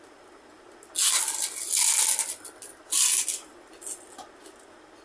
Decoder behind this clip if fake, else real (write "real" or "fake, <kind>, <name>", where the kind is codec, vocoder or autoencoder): real